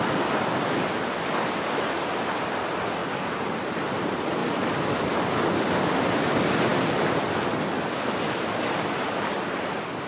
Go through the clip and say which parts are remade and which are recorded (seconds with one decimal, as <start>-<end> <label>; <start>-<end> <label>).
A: 0.0-10.1 recorded